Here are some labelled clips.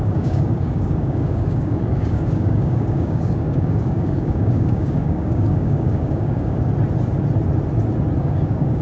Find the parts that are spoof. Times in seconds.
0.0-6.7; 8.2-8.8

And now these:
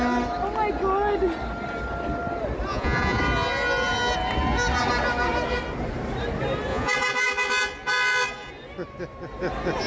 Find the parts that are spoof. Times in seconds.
2.7-3.2; 6.7-8.5

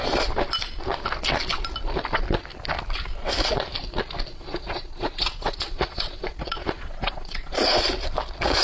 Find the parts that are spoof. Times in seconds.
4.3-7.9

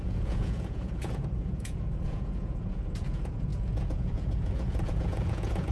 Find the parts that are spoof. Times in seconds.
0.0-5.7

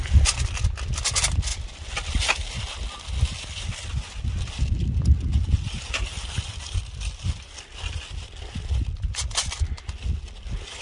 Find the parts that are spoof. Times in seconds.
1.5-3.9

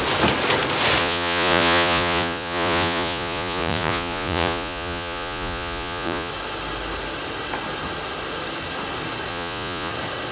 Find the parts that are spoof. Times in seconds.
1.0-6.3; 9.3-9.9